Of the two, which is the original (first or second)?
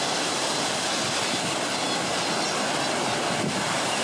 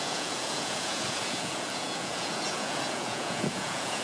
first